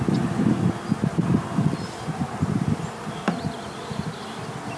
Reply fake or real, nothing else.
real